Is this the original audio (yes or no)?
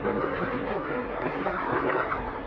no